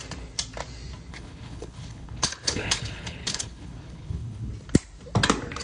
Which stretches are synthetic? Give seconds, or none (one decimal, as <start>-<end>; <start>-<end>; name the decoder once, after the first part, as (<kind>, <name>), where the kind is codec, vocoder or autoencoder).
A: 1.1-4.5 (codec, HILCodec)